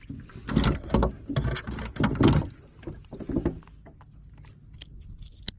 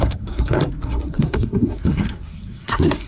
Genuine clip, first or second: first